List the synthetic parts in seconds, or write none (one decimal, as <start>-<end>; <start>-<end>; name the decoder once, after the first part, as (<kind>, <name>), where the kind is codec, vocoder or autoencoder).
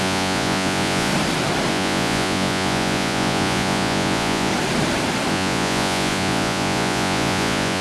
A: 0.0-1.1 (vocoder, Vocos); 1.7-4.5; 5.3-7.8